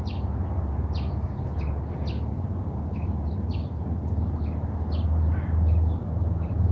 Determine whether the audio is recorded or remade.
recorded